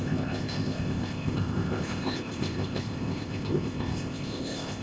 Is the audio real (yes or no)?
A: no